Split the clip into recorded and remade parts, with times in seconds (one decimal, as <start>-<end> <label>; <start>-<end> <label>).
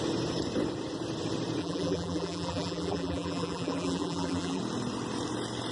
0.0-1.6 recorded; 1.6-4.6 remade; 4.6-5.7 recorded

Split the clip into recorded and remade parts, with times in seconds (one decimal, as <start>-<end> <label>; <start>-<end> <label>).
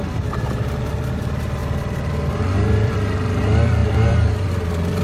0.0-1.6 recorded; 1.6-2.9 remade; 2.9-3.8 recorded; 3.8-4.5 remade; 4.5-5.0 recorded